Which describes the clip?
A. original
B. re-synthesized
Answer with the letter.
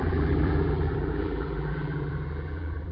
B